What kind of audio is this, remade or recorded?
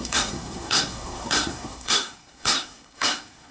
remade